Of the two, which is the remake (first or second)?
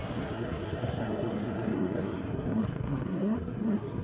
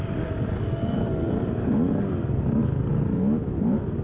first